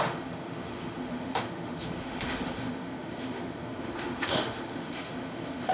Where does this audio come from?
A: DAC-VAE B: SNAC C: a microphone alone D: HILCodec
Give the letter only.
A